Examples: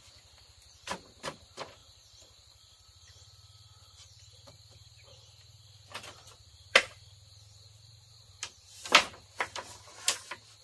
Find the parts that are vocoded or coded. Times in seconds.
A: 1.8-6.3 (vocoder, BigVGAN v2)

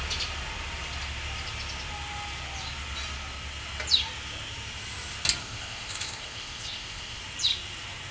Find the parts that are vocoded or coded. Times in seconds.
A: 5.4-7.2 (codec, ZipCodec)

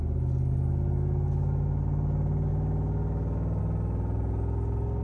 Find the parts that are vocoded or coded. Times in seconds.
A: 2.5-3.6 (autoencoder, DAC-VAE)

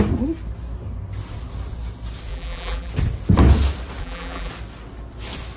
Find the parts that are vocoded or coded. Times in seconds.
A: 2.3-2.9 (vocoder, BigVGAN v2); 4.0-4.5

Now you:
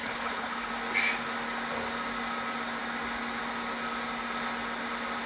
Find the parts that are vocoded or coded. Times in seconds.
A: 0.0-0.7 (codec, HILCodec)

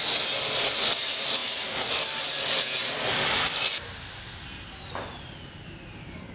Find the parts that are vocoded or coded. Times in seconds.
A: none

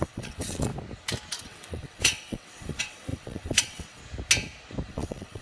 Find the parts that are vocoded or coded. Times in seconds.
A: 0.0-0.7 (vocoder, WaveNeXt); 1.4-4.0; 4.9-5.4